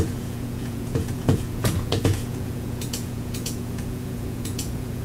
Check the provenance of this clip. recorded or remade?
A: remade